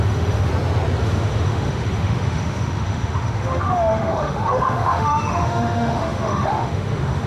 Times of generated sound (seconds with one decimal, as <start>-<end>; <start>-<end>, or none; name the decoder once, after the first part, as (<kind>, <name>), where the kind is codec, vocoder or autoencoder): 0.0-0.5 (autoencoder, DAC-VAE); 1.0-7.3